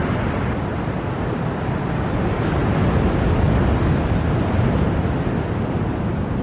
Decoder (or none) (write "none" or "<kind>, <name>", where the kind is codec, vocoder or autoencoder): none